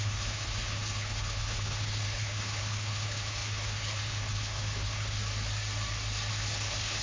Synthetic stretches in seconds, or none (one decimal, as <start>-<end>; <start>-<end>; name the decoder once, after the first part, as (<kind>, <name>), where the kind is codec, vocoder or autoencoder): 0.0-5.2 (codec, HILCodec); 6.3-7.0